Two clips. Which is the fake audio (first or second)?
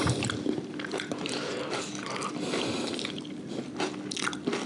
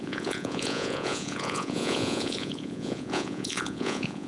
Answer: second